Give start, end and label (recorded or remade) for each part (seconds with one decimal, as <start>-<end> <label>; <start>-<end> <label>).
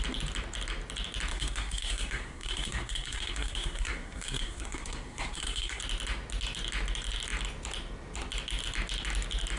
0.0-1.3 recorded; 1.3-5.8 remade; 5.8-9.6 recorded